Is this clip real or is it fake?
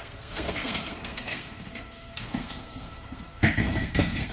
fake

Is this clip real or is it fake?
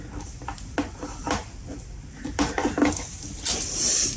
real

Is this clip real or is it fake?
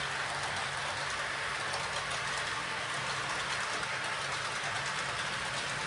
real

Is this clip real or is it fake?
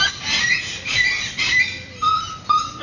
real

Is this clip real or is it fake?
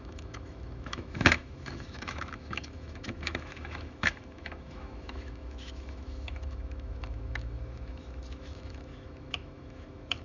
fake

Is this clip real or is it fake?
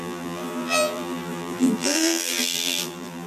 fake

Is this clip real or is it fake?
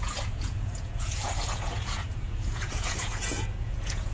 fake